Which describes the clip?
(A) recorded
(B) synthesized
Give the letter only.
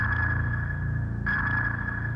B